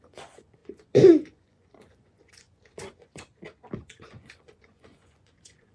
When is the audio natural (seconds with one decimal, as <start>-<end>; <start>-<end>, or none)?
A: 3.3-3.8